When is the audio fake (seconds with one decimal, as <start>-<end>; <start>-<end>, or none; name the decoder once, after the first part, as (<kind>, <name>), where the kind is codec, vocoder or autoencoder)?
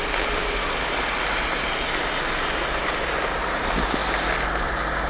none